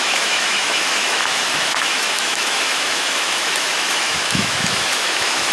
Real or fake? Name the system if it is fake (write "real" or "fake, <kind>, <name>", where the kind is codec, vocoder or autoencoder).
fake, autoencoder, DAC-VAE